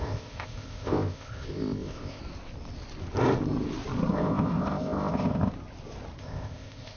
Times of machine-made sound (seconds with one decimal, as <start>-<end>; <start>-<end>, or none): 0.0-2.2; 4.1-5.5; 6.2-7.0